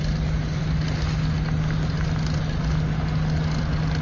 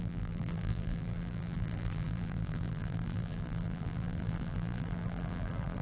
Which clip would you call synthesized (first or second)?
second